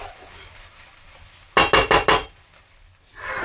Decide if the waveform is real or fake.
real